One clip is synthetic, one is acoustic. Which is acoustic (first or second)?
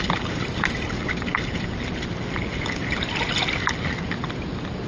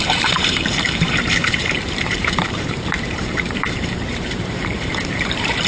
first